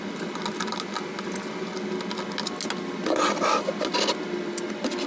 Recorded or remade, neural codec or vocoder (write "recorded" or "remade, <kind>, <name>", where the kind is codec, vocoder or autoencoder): recorded